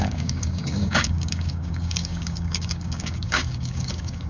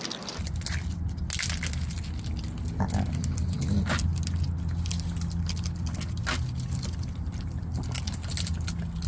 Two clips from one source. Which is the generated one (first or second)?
first